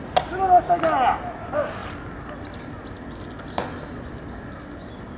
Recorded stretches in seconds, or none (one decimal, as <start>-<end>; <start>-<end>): 0.0-5.2